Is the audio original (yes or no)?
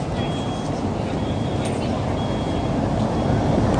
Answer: yes